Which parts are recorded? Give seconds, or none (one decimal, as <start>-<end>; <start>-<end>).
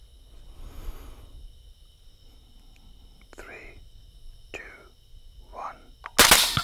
0.0-6.6